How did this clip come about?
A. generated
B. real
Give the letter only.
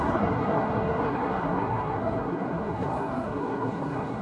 A